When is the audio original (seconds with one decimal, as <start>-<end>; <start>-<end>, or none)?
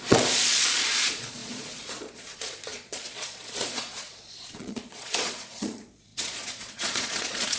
none